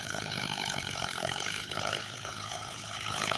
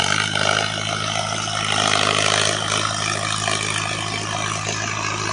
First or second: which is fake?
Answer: first